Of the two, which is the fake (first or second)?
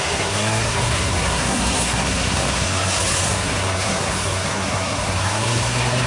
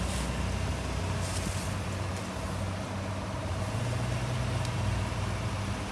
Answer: first